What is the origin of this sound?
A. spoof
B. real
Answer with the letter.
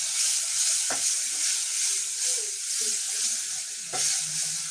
B